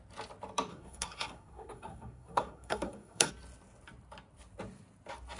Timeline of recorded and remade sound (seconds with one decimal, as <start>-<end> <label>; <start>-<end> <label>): 0.0-0.7 recorded; 0.7-3.3 remade; 3.3-5.4 recorded